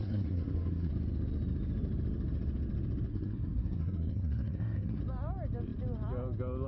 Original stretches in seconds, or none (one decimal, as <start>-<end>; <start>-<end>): 0.9-3.1; 5.0-6.7